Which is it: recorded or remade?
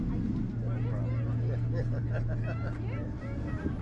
recorded